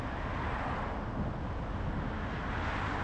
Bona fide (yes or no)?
yes